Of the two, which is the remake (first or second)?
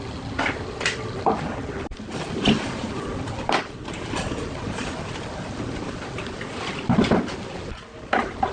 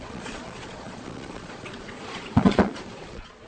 second